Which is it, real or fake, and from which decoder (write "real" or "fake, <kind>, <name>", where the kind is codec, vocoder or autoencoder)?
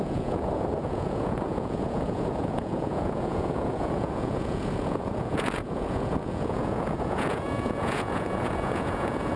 fake, vocoder, Vocos